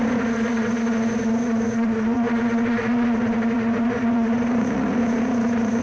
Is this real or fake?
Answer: fake